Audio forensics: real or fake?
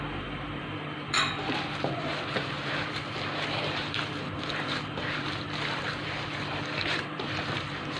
fake